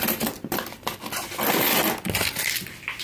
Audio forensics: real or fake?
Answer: real